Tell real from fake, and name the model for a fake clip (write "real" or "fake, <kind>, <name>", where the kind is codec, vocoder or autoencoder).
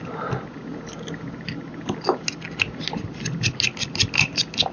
real